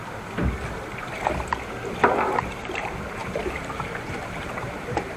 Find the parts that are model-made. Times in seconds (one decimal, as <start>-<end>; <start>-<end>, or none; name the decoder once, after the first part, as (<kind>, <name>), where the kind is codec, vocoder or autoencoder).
2.5-5.2 (vocoder, BigVGAN v2)